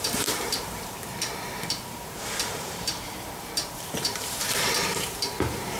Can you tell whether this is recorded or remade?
remade